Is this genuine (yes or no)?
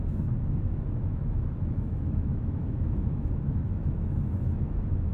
no